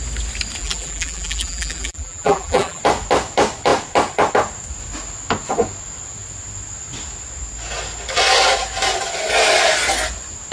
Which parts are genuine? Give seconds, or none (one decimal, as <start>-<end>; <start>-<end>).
0.0-0.6; 2.8-10.5